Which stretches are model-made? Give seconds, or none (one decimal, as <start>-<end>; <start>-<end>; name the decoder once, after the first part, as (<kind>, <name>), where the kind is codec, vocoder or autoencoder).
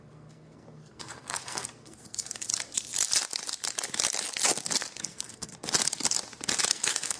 0.0-2.5 (codec, SNAC); 5.0-5.5; 6.7-7.2